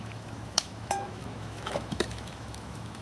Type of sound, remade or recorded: remade